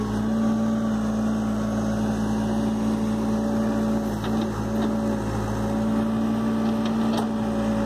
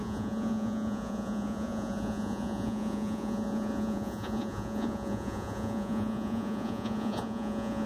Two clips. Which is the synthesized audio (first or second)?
second